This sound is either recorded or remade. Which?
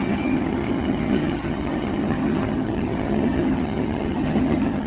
remade